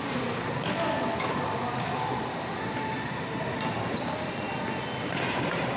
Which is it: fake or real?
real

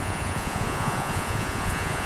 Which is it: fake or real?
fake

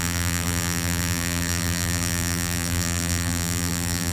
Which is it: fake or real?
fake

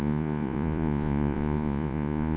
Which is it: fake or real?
fake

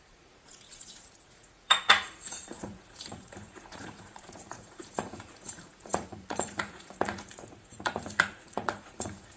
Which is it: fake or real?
fake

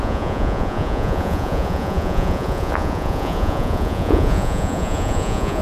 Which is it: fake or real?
fake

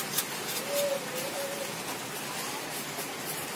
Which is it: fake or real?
real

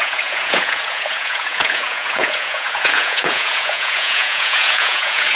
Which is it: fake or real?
fake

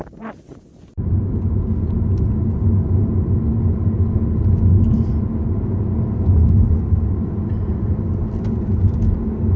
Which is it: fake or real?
real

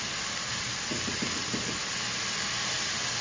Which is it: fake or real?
fake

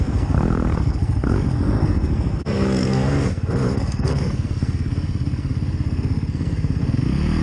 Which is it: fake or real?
fake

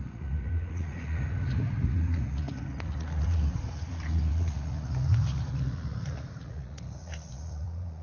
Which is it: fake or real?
fake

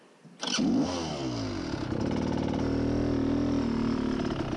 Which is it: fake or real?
real